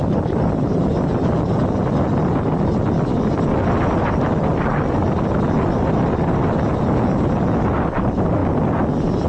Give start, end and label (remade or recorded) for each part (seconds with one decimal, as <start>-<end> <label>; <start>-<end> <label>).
0.0-0.9 remade; 0.9-9.3 recorded